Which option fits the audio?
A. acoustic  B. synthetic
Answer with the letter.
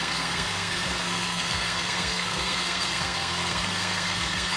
B